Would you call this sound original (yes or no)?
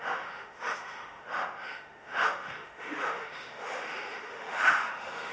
no